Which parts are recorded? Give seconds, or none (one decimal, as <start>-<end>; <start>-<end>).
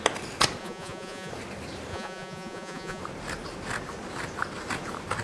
0.0-0.6; 1.3-1.9; 3.0-5.2